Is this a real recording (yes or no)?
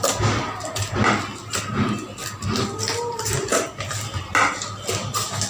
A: yes